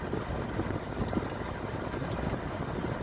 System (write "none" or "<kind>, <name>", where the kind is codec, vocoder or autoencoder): none